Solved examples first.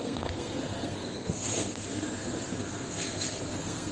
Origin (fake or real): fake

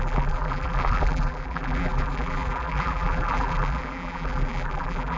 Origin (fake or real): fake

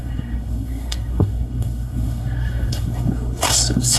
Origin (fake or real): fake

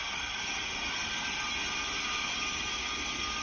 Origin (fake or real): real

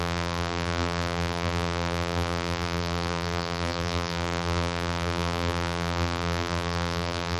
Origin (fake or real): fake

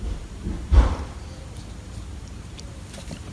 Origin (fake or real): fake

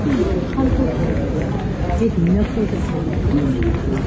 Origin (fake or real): real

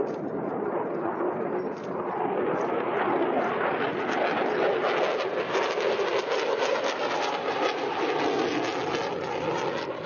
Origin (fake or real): real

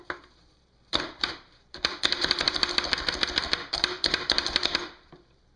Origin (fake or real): fake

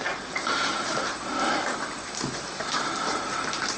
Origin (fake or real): fake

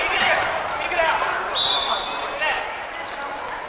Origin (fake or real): real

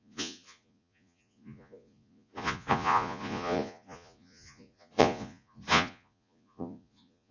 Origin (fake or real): fake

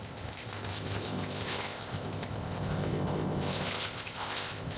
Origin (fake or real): fake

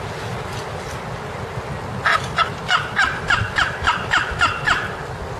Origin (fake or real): real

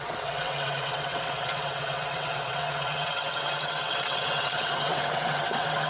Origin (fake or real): fake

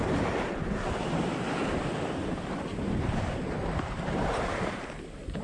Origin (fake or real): fake